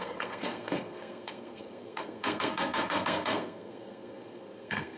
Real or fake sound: fake